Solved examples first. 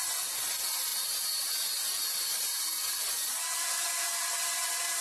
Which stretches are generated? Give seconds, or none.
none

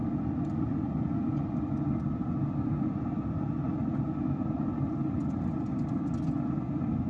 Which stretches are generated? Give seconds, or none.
none

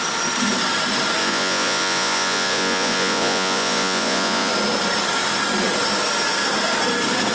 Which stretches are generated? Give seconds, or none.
1.2-4.5 (vocoder, Vocos)

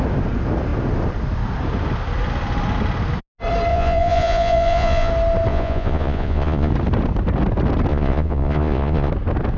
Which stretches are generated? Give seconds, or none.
3.7-5.1 (vocoder, Vocos); 5.5-6.7; 7.9-9.1

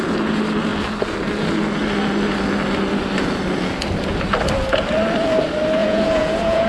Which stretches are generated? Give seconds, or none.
5.8-6.7 (vocoder, Vocos)